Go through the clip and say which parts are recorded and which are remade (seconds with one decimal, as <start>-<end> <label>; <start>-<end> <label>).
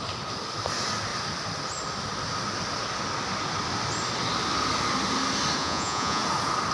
0.0-5.6 recorded; 5.6-6.2 remade; 6.2-6.7 recorded